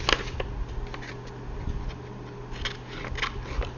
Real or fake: real